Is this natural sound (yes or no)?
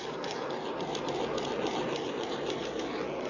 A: yes